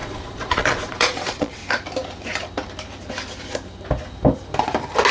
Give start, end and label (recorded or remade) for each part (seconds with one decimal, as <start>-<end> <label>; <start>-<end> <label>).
0.0-1.6 remade; 1.6-5.1 recorded